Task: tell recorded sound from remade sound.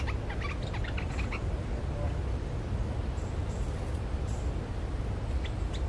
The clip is recorded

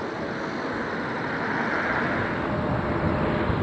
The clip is recorded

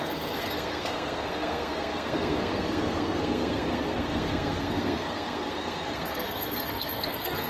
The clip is remade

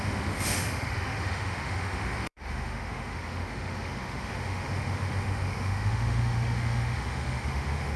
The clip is remade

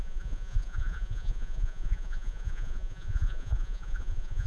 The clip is remade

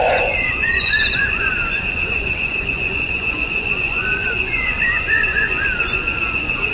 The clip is remade